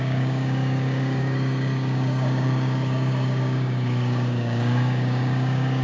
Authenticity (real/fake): fake